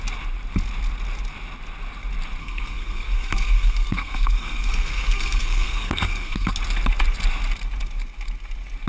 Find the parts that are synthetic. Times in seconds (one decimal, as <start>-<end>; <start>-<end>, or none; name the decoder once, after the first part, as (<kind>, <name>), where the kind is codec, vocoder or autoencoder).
2.4-6.5 (codec, SNAC)